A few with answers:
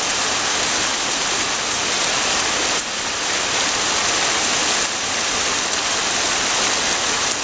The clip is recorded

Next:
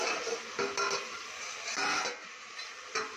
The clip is recorded